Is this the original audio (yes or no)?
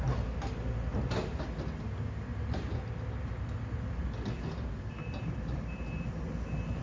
yes